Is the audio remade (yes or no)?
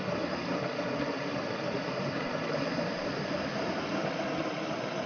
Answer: no